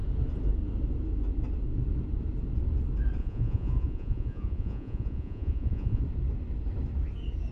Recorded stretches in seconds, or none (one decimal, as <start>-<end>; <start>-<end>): 0.0-3.2; 6.0-7.5